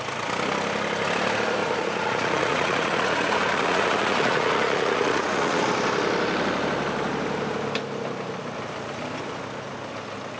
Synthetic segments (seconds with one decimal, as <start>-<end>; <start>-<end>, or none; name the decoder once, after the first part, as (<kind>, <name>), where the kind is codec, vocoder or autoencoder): 1.6-5.6 (vocoder, Vocos)